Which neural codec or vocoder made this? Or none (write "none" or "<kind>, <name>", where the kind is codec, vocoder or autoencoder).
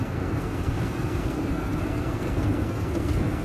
codec, SNAC